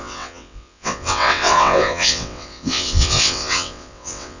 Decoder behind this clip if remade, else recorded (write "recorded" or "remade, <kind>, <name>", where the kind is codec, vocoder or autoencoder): remade, vocoder, WaveNeXt